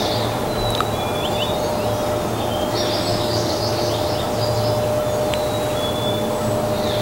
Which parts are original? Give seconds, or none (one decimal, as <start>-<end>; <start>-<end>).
0.0-3.1; 3.6-7.0